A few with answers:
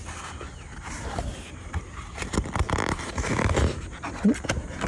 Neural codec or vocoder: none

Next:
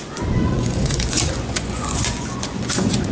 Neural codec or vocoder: vocoder, Vocos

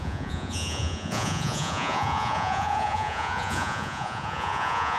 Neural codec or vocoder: vocoder, Vocos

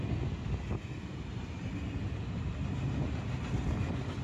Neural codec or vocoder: none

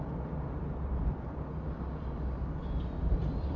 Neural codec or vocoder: none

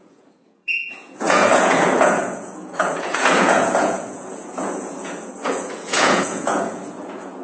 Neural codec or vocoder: vocoder, Vocos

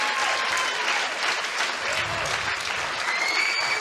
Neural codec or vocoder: none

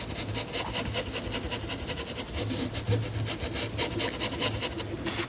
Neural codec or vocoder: none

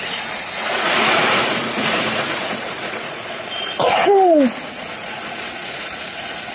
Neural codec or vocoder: vocoder, Vocos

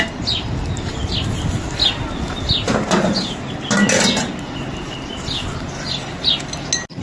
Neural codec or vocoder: none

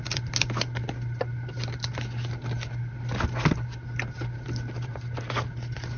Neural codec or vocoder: none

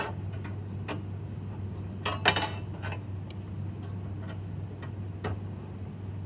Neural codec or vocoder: none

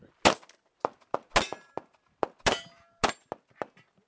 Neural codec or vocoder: none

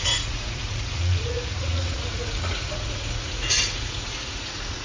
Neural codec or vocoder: vocoder, Vocos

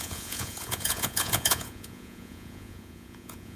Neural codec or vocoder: vocoder, Vocos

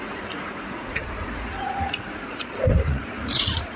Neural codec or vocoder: vocoder, Vocos